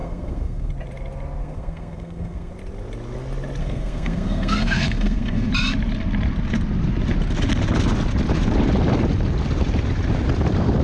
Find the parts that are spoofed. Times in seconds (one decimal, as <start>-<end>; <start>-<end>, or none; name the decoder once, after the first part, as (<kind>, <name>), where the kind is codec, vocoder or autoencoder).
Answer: 0.0-0.7 (codec, SNAC); 1.4-2.5; 3.6-5.5